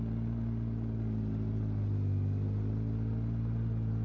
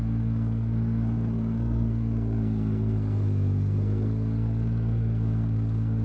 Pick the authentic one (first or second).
first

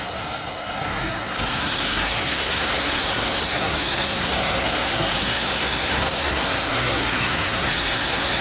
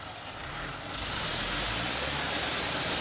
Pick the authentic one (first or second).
second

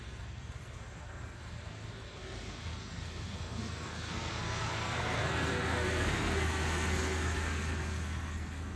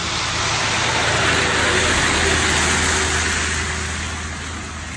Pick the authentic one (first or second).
second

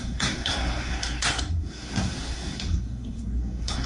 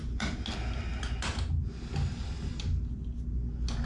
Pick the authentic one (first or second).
second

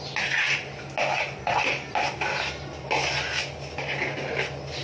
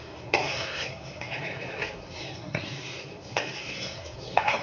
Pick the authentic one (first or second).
first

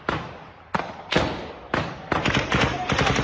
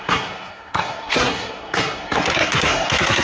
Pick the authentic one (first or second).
first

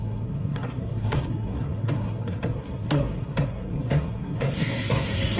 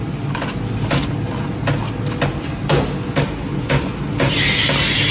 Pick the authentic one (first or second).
second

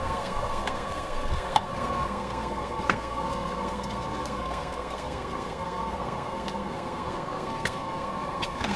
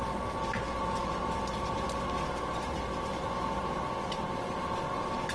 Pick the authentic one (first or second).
second